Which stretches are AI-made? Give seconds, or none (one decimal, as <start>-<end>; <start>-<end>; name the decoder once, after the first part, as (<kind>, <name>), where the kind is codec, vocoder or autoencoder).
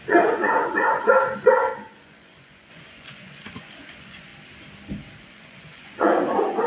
0.0-4.3 (vocoder, Vocos); 5.2-6.7